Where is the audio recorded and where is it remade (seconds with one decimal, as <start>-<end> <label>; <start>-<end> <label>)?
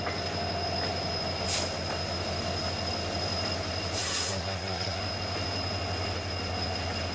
0.0-4.0 recorded; 4.0-5.0 remade; 5.0-7.1 recorded